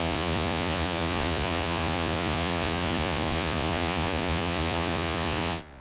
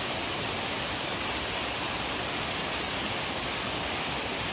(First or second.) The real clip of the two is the second